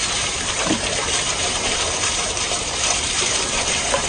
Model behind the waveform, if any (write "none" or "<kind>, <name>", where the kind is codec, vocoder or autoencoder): vocoder, BigVGAN v2